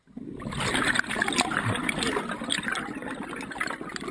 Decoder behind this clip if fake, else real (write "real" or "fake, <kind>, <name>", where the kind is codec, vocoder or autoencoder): real